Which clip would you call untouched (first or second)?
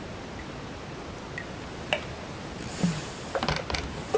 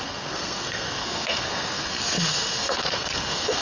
first